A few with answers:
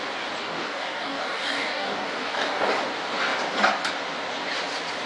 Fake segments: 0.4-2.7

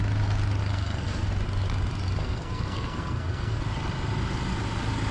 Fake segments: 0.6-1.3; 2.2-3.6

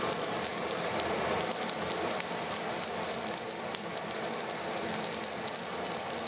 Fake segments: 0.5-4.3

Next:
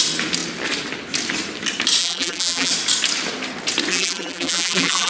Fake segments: 2.0-2.7; 3.9-5.1